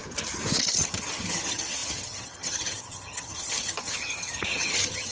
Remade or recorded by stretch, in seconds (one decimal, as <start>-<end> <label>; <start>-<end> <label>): 0.0-0.6 recorded; 0.6-5.1 remade